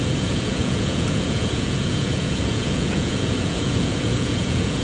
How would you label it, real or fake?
fake